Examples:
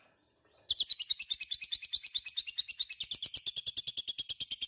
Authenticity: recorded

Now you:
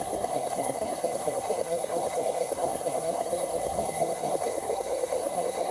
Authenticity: remade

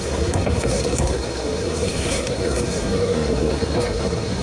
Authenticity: remade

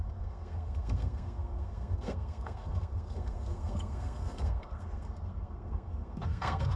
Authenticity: remade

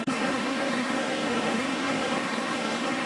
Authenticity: remade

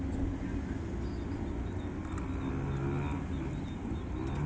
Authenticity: recorded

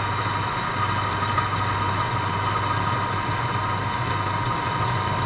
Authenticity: recorded